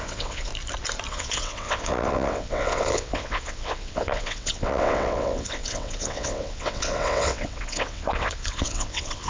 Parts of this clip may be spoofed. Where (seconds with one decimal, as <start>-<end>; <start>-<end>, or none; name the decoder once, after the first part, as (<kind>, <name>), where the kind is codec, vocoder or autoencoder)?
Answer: 0.0-0.5 (vocoder, WaveNeXt); 1.1-9.3